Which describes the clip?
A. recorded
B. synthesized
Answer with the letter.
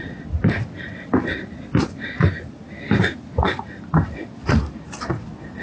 B